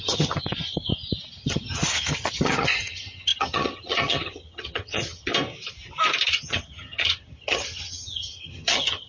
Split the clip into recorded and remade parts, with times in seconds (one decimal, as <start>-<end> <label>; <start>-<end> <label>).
0.0-0.9 remade; 0.9-1.4 recorded; 1.4-5.3 remade; 5.3-6.3 recorded; 6.3-9.1 remade